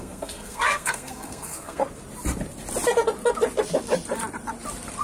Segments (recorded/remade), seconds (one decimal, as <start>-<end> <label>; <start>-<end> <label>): 0.0-1.8 remade; 1.8-5.0 recorded